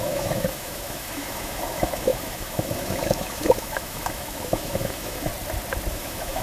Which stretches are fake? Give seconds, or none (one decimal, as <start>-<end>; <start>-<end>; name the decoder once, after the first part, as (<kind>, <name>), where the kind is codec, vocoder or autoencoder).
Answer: 0.0-5.3 (autoencoder, DAC-VAE); 5.9-6.4